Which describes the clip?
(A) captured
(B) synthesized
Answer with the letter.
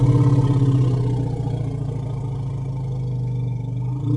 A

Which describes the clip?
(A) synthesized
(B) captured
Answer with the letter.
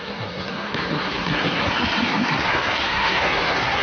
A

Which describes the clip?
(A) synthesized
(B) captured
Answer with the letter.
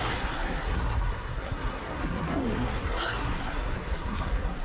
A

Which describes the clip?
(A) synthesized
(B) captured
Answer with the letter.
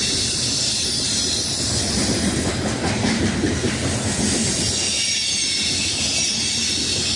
B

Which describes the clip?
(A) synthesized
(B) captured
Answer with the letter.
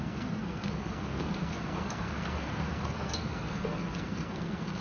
A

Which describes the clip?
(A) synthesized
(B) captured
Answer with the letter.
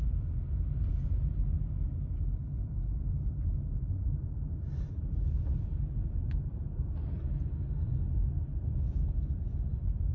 B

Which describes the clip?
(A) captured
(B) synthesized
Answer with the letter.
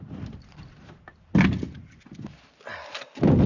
A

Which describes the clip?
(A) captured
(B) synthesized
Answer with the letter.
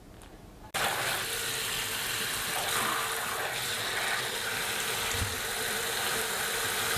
A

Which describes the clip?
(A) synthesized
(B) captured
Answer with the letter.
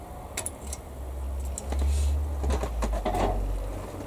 B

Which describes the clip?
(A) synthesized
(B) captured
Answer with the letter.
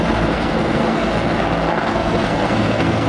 A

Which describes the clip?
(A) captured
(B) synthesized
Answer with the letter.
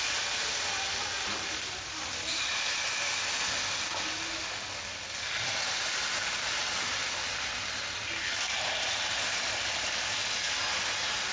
A